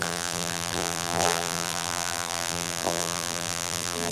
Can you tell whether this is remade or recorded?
remade